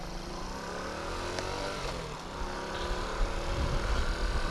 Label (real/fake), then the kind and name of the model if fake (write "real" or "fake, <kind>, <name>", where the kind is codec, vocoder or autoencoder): real